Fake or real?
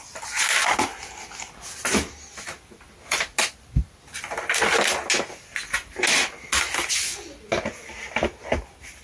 real